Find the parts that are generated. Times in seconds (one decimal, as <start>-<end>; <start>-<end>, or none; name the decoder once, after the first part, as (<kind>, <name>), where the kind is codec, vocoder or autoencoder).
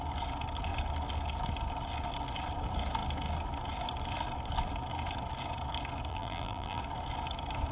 6.1-6.8 (vocoder, BigVGAN v2)